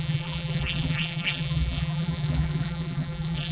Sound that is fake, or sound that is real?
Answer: fake